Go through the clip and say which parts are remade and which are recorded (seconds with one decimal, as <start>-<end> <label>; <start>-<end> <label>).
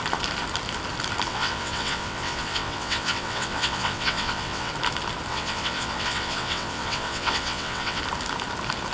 0.0-1.3 recorded; 1.3-4.7 remade; 4.7-5.3 recorded; 5.3-8.0 remade; 8.0-8.9 recorded